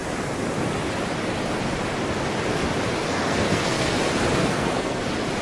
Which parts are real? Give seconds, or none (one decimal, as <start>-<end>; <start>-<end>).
0.0-3.0; 4.0-4.4; 5.0-5.4